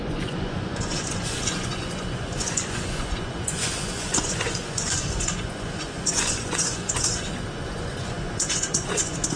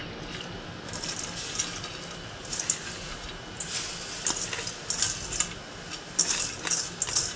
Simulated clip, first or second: first